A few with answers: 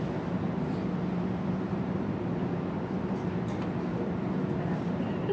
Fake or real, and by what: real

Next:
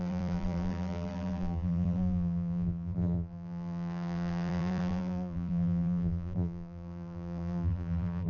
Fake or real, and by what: fake, vocoder, BigVGAN v2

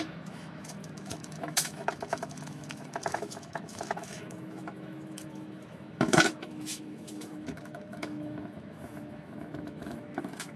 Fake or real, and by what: fake, autoencoder, DAC-VAE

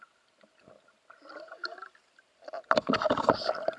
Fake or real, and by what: fake, vocoder, BigVGAN v2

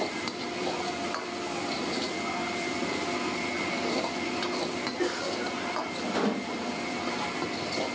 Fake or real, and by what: fake, vocoder, BigVGAN v2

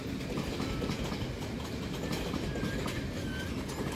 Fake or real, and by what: real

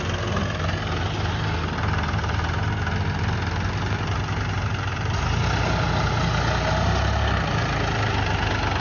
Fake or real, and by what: real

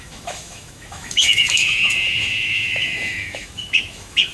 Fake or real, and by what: fake, autoencoder, DAC-VAE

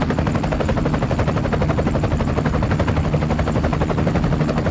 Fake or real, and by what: real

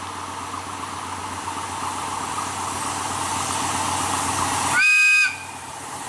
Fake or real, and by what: real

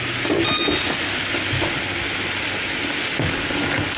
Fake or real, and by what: real